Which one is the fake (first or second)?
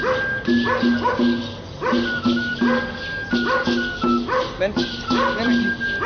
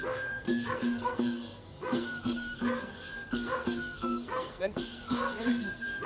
second